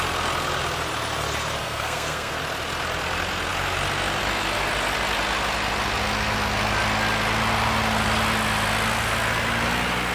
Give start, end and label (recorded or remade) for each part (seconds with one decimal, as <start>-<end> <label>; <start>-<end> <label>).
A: 0.0-1.6 recorded; 1.6-2.4 remade; 2.4-10.1 recorded